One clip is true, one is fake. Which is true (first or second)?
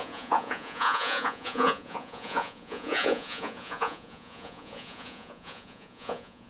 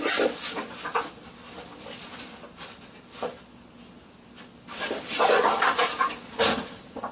second